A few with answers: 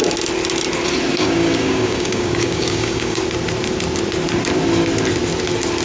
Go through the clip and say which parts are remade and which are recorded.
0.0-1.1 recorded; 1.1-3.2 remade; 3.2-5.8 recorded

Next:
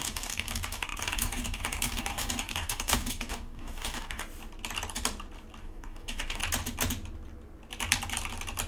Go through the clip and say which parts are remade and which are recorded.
0.0-4.2 remade; 4.2-5.6 recorded; 5.6-6.4 remade; 6.4-8.7 recorded

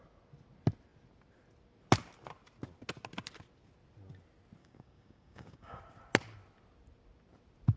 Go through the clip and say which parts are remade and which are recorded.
0.0-4.6 recorded; 4.6-5.8 remade; 5.8-7.8 recorded

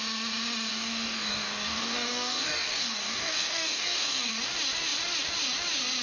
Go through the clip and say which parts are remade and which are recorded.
0.0-0.7 recorded; 0.7-4.3 remade; 4.3-6.0 recorded

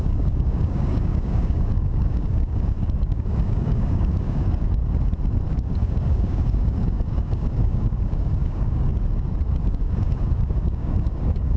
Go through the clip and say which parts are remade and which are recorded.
0.0-4.8 remade; 4.8-5.5 recorded; 5.5-8.9 remade; 8.9-9.5 recorded; 9.5-11.6 remade

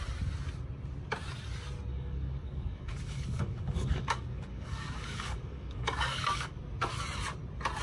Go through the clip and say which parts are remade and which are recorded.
0.0-1.9 recorded; 1.9-6.6 remade; 6.6-7.8 recorded

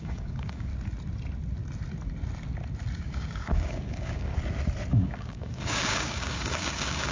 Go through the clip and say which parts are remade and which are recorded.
0.0-0.7 remade; 0.7-3.0 recorded; 3.0-4.3 remade; 4.3-4.9 recorded; 4.9-7.1 remade

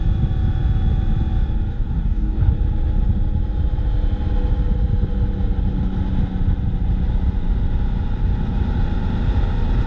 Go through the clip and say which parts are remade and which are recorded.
0.0-1.7 recorded; 1.7-2.5 remade; 2.5-9.9 recorded